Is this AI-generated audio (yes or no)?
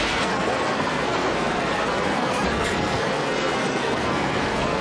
yes